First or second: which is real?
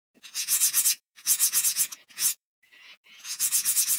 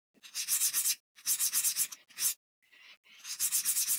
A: second